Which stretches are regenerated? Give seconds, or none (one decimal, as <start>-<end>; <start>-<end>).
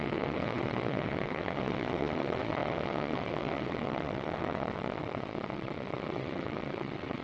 0.0-7.2